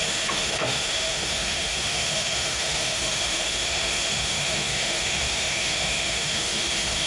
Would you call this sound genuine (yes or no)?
no